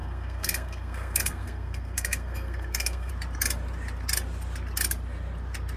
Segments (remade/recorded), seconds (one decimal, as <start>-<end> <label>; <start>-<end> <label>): 0.0-3.1 remade; 3.1-5.8 recorded